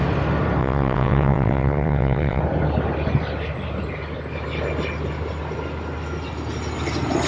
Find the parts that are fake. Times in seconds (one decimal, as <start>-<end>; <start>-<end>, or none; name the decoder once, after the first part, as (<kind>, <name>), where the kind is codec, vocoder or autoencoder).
0.6-2.4 (vocoder, WaveNeXt)